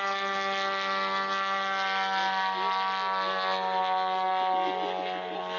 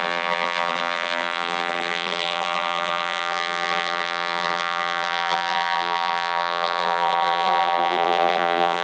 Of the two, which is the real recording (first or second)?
first